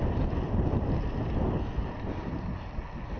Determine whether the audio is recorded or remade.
recorded